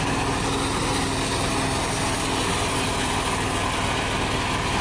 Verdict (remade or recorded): recorded